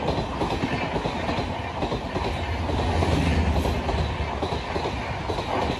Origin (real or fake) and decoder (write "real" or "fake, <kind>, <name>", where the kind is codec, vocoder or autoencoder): real